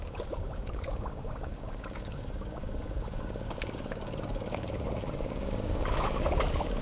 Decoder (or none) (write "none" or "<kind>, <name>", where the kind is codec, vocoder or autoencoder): codec, DAC